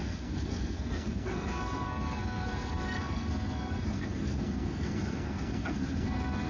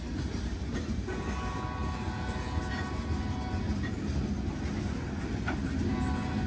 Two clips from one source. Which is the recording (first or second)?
second